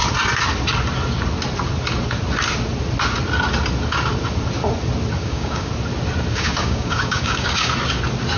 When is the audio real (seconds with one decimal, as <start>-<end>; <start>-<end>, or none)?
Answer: 0.0-5.2; 5.7-6.3; 7.7-8.4